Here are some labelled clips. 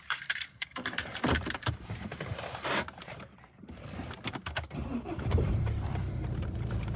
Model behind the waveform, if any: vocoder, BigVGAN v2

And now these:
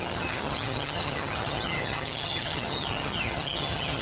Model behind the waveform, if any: vocoder, HiFi-GAN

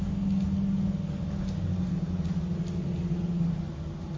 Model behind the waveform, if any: none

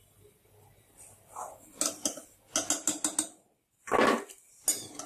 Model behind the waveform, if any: none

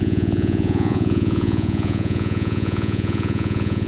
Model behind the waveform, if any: vocoder, Vocos